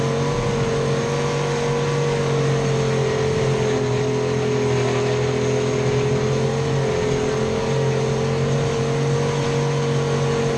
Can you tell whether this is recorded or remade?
recorded